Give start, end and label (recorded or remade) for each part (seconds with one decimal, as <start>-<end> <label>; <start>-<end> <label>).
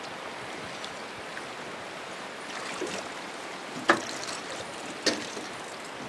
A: 0.0-6.1 recorded